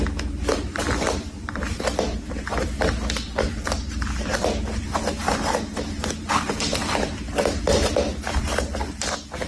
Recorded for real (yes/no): no